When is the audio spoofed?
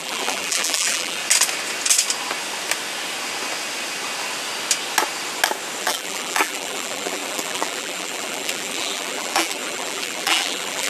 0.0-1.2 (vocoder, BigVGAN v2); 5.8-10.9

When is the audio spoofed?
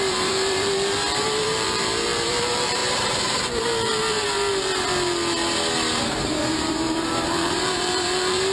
0.0-2.8 (vocoder, BigVGAN v2); 6.2-8.5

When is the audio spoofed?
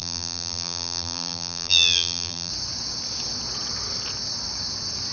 0.0-2.5 (vocoder, BigVGAN v2)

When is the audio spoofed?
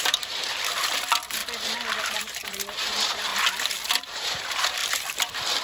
0.0-0.4 (vocoder, BigVGAN v2); 1.0-1.4; 2.1-3.3; 4.0-4.8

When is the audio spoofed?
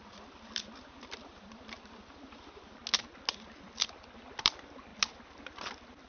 0.0-2.8 (vocoder, BigVGAN v2); 3.7-4.9; 5.4-6.1